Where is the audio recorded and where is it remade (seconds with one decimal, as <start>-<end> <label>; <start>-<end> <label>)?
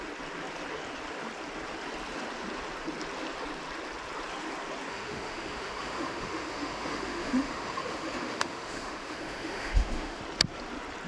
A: 0.0-4.9 recorded; 4.9-10.2 remade; 10.2-11.1 recorded